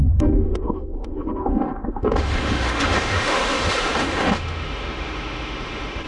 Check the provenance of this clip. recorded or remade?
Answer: remade